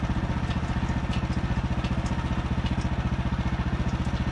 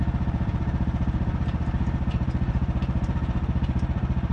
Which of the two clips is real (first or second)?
first